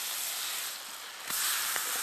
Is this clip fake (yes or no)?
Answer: no